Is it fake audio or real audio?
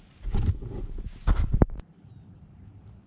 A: real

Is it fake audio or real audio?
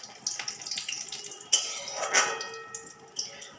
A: real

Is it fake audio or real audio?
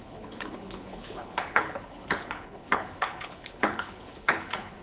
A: fake